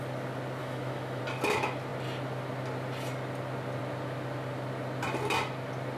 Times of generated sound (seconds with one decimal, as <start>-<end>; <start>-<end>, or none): 0.6-1.2